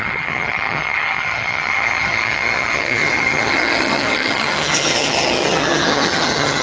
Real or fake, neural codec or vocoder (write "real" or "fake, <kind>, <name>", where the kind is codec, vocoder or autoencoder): fake, vocoder, HiFi-GAN